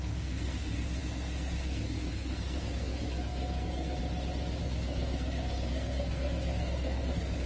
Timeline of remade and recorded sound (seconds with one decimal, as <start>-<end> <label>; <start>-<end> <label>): 0.0-4.0 remade; 4.0-4.6 recorded; 4.6-7.5 remade